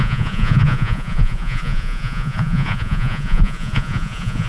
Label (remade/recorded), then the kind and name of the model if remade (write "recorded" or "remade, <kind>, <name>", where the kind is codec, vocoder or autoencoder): remade, vocoder, Vocos